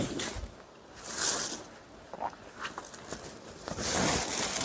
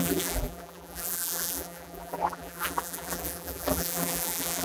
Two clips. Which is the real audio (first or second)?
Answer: first